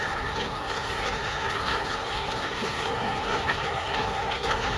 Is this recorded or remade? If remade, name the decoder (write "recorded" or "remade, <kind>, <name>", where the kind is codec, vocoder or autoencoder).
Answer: remade, codec, SNAC